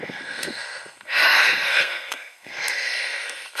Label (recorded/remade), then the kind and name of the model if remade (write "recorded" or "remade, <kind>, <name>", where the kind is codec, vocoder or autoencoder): remade, codec, SNAC